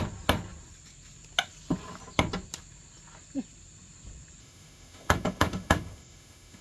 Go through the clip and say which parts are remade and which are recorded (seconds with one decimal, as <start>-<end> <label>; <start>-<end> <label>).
0.0-4.4 recorded; 4.4-6.6 remade